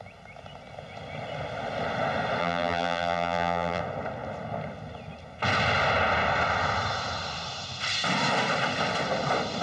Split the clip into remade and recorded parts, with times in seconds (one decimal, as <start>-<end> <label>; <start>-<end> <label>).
0.0-2.4 recorded; 2.4-3.8 remade; 3.8-9.6 recorded